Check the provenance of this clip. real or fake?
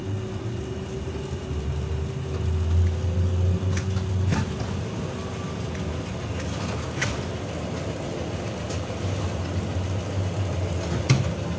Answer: real